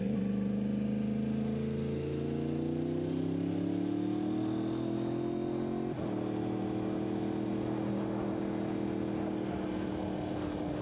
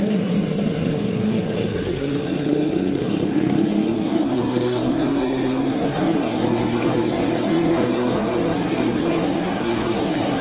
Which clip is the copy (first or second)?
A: second